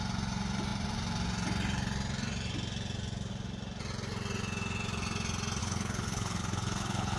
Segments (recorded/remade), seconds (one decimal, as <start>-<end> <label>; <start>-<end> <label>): 0.0-5.6 recorded; 5.6-7.2 remade